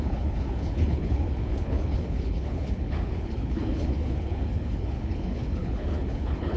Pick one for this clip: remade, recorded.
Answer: remade